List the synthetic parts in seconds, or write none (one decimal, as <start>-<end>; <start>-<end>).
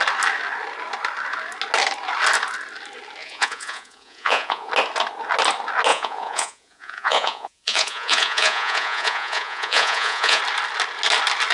3.2-4.7; 5.9-10.4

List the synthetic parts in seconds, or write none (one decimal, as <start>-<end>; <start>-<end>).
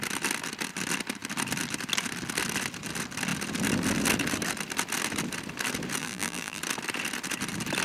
6.0-6.6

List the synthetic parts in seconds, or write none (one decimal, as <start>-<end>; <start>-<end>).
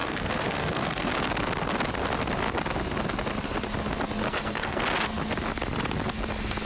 0.0-1.1; 4.2-4.8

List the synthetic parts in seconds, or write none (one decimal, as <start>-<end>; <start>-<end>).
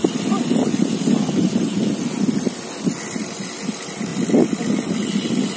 none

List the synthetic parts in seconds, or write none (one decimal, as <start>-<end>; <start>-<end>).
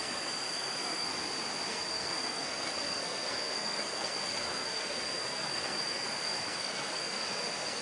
0.0-1.1; 1.7-7.8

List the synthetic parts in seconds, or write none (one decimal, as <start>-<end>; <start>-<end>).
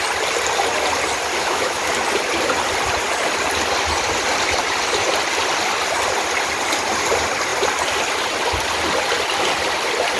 1.4-1.9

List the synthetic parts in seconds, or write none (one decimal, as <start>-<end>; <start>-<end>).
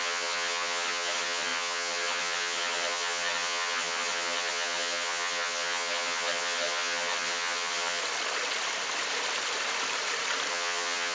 0.0-8.0; 10.5-11.1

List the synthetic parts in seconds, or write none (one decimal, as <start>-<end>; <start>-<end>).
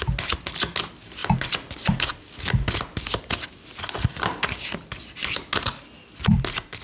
none